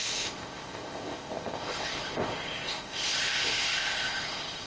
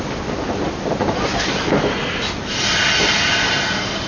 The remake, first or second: first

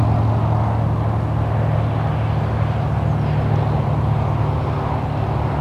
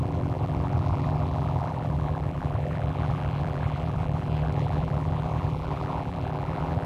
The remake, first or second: second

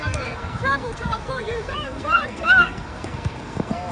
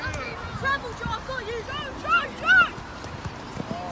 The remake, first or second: first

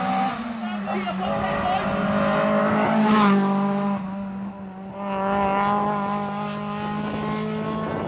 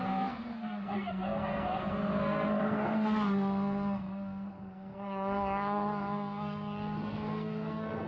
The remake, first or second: second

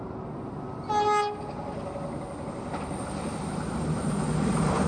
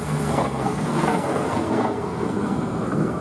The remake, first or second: second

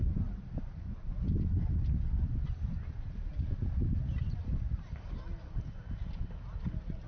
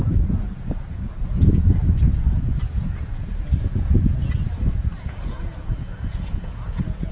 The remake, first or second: second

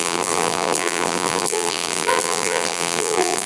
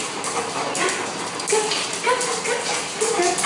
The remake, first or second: first